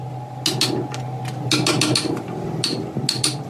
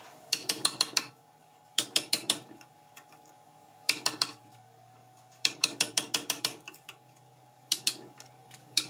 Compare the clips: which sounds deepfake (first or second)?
second